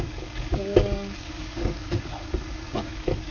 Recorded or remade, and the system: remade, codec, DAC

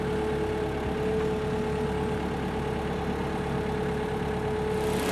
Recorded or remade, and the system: recorded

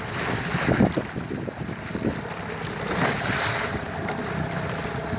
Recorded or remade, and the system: recorded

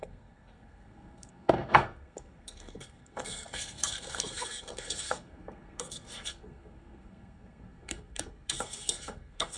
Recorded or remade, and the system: remade, codec, SNAC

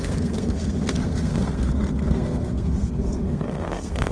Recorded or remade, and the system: remade, codec, SNAC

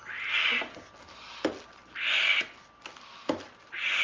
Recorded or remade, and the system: recorded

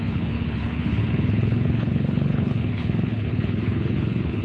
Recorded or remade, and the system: remade, codec, HILCodec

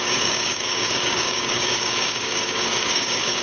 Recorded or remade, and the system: remade, codec, DAC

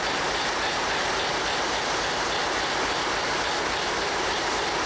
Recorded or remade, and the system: recorded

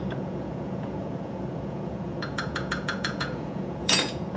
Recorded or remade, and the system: remade, vocoder, Vocos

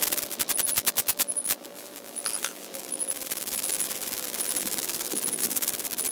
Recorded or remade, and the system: remade, vocoder, BigVGAN v2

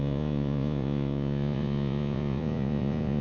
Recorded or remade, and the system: remade, vocoder, Vocos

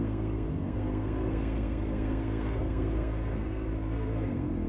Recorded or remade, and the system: remade, codec, SNAC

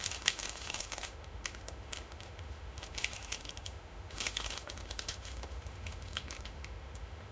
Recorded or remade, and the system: remade, autoencoder, DAC-VAE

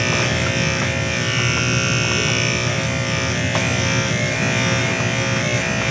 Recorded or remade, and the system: recorded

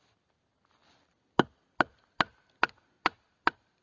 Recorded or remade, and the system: recorded